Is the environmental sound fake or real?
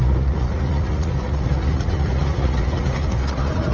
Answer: fake